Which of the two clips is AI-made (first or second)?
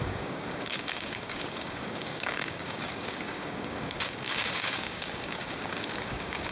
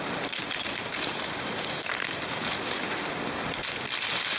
first